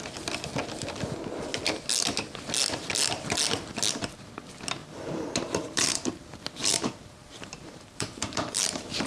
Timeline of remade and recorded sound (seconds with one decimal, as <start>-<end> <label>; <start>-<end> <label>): 0.0-4.8 recorded; 4.8-5.9 remade; 5.9-6.6 recorded; 6.6-9.1 remade